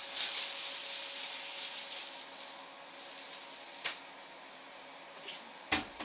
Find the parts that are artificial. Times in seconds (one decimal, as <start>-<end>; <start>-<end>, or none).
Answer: none